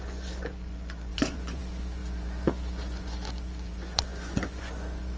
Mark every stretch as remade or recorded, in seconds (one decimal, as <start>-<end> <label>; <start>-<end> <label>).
0.0-5.2 remade